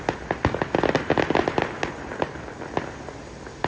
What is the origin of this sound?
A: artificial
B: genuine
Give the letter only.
B